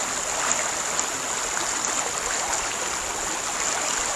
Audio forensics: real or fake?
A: real